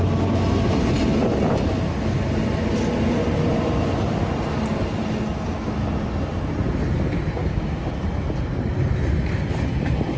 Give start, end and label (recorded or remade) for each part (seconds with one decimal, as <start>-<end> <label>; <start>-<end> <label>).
0.0-7.4 recorded; 7.4-7.9 remade; 7.9-10.2 recorded